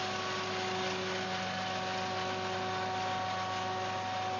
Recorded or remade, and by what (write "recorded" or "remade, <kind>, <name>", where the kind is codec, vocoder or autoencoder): recorded